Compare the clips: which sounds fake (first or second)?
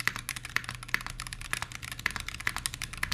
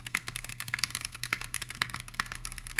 second